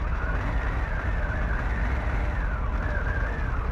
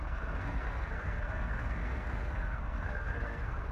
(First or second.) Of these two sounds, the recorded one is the first